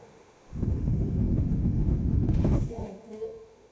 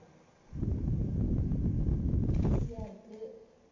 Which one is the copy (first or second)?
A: first